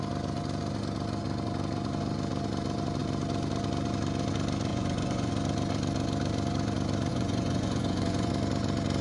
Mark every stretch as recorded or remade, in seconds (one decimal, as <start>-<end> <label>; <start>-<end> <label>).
0.0-4.7 recorded; 4.7-5.3 remade; 5.3-7.1 recorded; 7.1-8.3 remade; 8.3-9.0 recorded